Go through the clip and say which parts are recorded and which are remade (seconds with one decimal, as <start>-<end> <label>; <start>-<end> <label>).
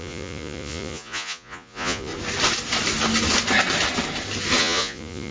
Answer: 0.0-2.1 remade; 2.1-4.6 recorded; 4.6-5.3 remade